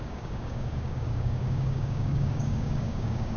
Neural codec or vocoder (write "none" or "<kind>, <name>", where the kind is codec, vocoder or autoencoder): codec, DAC